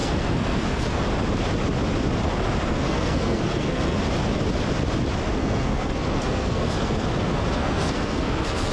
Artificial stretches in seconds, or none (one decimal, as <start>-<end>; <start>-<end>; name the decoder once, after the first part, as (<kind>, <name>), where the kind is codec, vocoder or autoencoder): 0.0-1.0 (codec, SNAC); 2.7-4.0; 5.4-8.7